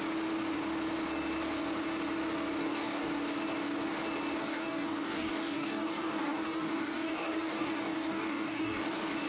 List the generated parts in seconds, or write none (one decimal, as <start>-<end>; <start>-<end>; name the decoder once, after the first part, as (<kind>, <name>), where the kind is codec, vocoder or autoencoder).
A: 2.6-3.1 (codec, DAC); 4.4-8.8